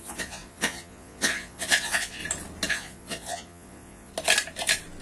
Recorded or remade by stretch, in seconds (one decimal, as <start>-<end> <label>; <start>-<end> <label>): 0.0-2.2 remade; 2.2-2.7 recorded; 2.7-4.1 remade; 4.1-5.0 recorded